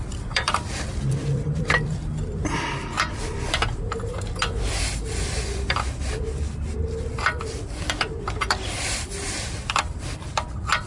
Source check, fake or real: fake